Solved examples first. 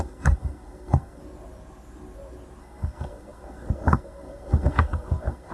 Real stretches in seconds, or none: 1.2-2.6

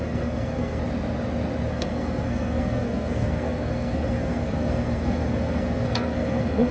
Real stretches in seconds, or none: 0.8-1.7

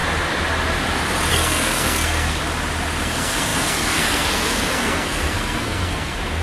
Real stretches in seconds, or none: 0.0-1.3; 2.4-3.0